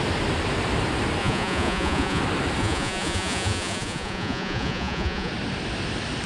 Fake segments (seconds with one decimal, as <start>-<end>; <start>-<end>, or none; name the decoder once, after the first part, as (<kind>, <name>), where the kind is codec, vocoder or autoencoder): 1.2-2.2 (vocoder, Vocos); 2.6-5.3